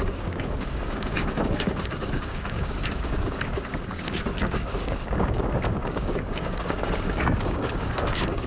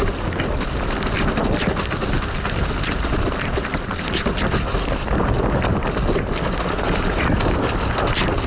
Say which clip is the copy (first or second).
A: first